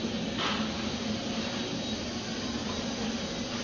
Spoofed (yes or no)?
no